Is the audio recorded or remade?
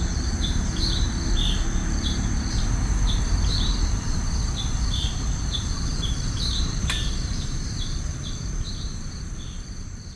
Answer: remade